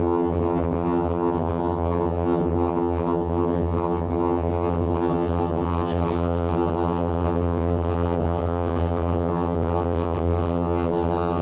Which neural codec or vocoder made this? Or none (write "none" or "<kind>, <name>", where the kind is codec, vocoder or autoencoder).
vocoder, HiFi-GAN